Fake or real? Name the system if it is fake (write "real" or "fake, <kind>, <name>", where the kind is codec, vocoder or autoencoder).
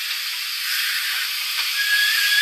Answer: real